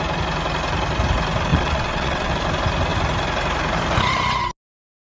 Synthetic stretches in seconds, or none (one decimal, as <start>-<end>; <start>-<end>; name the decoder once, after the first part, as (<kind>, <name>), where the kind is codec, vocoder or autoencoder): 1.5-2.3 (vocoder, WaveNeXt)